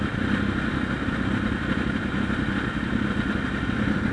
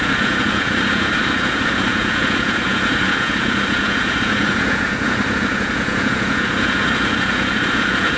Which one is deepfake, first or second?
second